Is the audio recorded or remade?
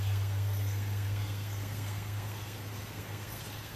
remade